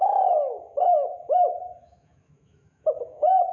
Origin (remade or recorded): remade